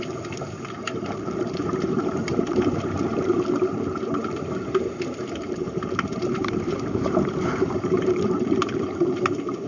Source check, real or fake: fake